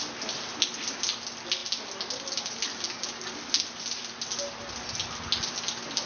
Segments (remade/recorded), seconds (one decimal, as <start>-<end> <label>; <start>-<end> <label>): 0.0-6.1 recorded